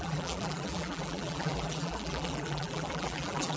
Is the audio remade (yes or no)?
yes